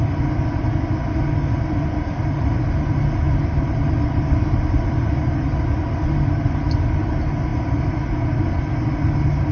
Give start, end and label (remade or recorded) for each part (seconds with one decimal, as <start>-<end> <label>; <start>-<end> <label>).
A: 0.0-9.5 recorded